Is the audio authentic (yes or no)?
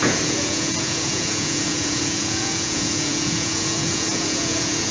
no